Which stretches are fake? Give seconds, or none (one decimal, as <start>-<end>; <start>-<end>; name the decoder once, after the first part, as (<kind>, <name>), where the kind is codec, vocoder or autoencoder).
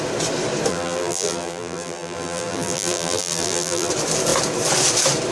0.7-3.9 (vocoder, BigVGAN v2)